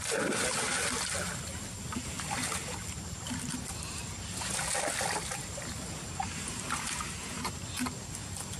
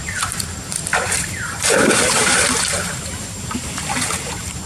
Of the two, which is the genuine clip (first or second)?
first